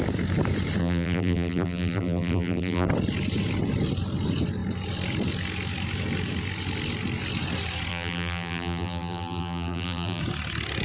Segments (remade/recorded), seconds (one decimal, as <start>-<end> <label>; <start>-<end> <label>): 0.0-0.8 recorded; 0.8-2.9 remade; 2.9-7.9 recorded; 7.9-10.2 remade; 10.2-10.8 recorded